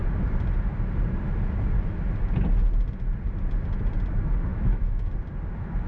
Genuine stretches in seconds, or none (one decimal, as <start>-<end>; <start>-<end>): 0.0-4.5; 5.1-5.9